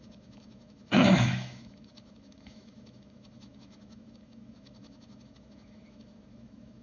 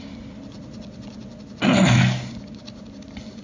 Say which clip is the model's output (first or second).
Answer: first